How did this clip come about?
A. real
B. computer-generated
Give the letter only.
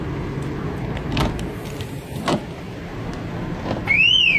A